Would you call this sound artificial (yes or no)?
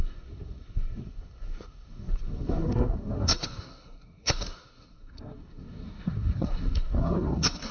yes